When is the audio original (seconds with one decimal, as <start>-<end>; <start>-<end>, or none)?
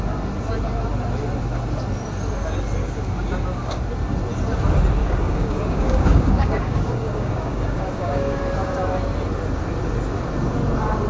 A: 0.0-2.8; 3.8-5.0; 8.4-11.1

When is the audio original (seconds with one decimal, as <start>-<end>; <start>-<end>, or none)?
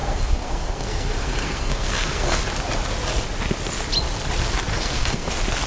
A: 2.4-4.7; 5.3-5.7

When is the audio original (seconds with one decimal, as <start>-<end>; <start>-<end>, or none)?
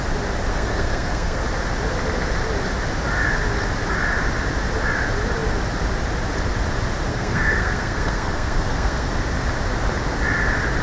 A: 0.0-0.5; 1.4-7.1; 9.1-10.8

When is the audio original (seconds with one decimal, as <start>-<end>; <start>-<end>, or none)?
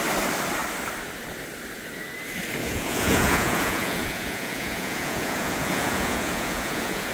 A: 0.0-2.6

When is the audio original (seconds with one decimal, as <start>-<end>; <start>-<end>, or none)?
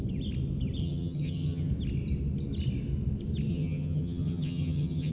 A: 0.0-0.8; 1.7-3.5